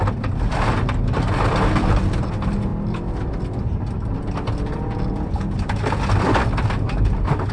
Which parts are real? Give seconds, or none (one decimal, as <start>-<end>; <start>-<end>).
0.0-7.5